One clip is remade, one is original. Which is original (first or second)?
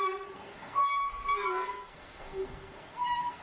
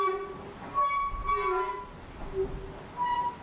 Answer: second